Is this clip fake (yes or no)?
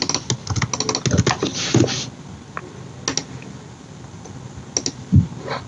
no